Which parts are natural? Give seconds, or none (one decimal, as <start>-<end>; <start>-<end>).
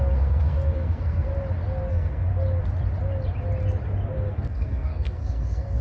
1.3-1.9; 2.3-4.3